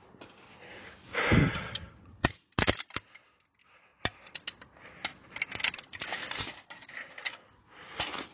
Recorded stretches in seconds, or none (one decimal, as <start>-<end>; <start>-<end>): 0.0-1.4; 2.3-8.3